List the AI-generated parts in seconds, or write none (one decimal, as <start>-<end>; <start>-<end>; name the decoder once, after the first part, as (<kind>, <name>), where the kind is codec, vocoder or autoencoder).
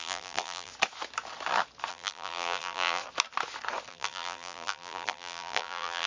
0.0-0.7 (vocoder, BigVGAN v2); 1.9-3.0; 3.9-6.1